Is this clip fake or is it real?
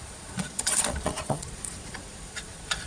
fake